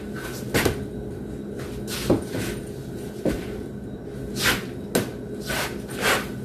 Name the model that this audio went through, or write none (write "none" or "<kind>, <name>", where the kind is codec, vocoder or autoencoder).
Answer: none